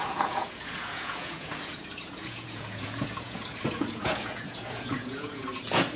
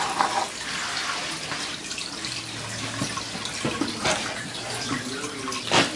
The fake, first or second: first